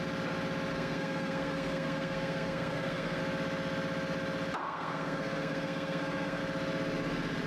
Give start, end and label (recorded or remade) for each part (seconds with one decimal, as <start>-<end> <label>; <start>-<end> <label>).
0.0-0.7 recorded; 0.7-3.2 remade; 3.2-4.6 recorded; 4.6-6.4 remade; 6.4-7.5 recorded